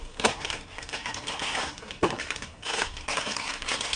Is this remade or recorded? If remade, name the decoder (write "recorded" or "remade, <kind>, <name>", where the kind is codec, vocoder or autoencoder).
remade, codec, SNAC